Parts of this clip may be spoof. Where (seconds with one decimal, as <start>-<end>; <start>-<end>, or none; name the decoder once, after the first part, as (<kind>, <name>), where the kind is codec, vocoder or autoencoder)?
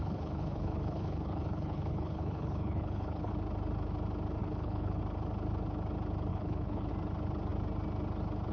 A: 0.0-3.3 (codec, HILCodec); 4.4-5.0; 6.3-6.9